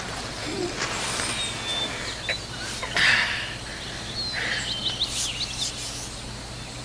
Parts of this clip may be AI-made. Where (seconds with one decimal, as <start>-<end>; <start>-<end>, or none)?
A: none